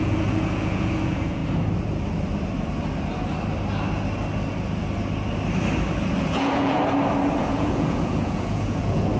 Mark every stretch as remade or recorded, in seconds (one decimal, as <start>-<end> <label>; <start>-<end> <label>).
0.0-1.4 remade; 1.4-6.2 recorded; 6.2-6.8 remade; 6.8-7.4 recorded; 7.4-9.2 remade